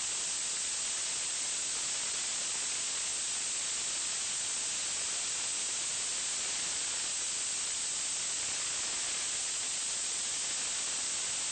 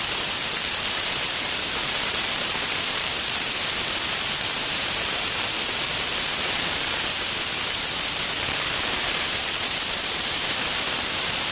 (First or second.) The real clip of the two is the first